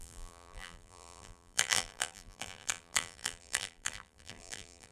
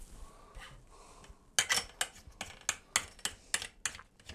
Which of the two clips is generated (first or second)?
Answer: first